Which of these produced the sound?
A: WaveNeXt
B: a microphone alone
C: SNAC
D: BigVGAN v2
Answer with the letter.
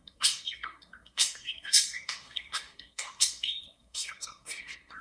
C